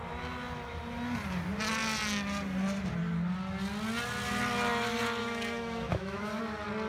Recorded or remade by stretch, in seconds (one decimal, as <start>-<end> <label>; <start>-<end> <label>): 0.0-5.2 recorded; 5.2-6.4 remade; 6.4-6.9 recorded